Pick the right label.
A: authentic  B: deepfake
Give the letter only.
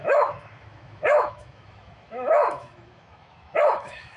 B